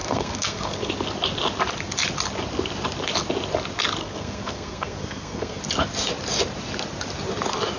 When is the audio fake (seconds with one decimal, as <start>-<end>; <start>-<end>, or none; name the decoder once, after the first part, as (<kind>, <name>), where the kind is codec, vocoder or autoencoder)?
0.0-0.9 (codec, SNAC); 4.0-5.6